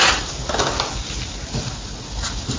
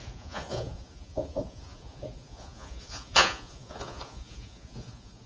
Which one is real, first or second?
first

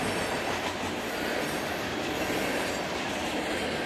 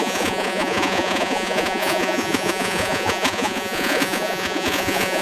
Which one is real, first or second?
first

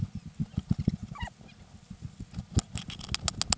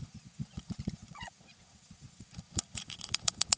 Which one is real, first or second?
first